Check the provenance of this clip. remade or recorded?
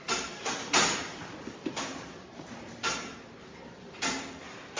remade